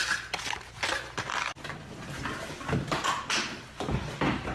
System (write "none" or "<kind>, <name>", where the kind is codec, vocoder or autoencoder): none